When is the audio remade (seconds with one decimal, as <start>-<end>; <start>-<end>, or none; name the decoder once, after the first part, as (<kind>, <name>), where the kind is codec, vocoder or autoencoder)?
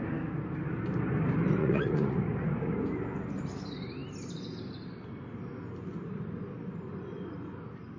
1.6-2.2 (vocoder, Vocos)